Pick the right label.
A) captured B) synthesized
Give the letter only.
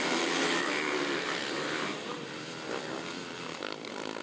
A